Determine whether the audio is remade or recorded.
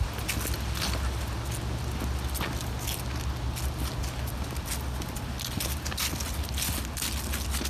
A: recorded